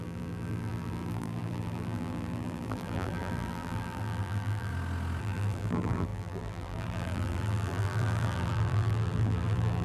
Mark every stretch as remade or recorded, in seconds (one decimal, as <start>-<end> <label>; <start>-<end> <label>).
0.0-4.7 remade; 4.7-5.2 recorded; 5.2-9.8 remade